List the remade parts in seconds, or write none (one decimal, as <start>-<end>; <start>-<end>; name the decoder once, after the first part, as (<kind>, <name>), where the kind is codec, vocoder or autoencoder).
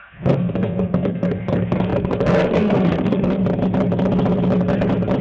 0.0-3.4 (codec, SNAC)